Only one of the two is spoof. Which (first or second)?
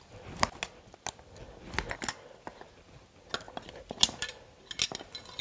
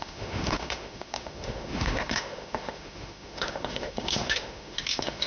second